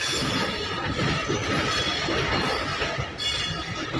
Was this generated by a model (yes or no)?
no